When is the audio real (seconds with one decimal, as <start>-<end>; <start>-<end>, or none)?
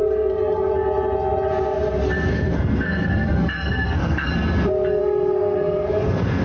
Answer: 0.7-2.3; 4.3-5.0